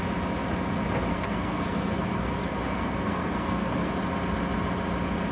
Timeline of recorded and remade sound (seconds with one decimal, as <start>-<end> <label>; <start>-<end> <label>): 0.0-1.1 recorded; 1.1-3.9 remade; 3.9-5.3 recorded